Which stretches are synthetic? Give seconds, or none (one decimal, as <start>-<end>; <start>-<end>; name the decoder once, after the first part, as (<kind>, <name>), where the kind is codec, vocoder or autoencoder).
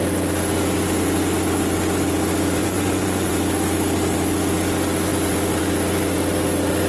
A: 2.6-3.3 (vocoder, Vocos)